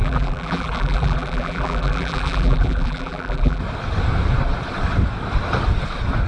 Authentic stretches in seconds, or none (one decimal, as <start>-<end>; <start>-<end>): 3.6-6.3